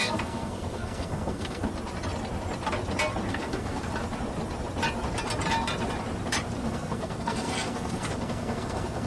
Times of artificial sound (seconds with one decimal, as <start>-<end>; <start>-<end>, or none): 0.0-1.7; 3.3-3.9; 6.6-9.1